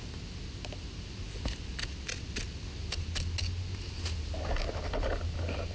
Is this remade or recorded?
recorded